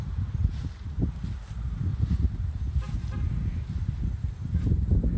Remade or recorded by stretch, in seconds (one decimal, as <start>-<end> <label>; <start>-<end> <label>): 0.0-0.4 recorded; 0.4-1.0 remade; 1.0-1.9 recorded; 1.9-4.7 remade; 4.7-5.2 recorded